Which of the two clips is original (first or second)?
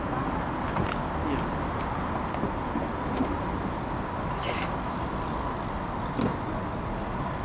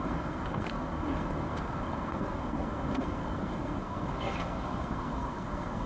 first